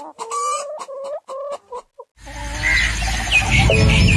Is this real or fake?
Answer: real